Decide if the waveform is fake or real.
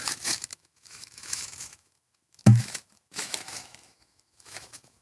fake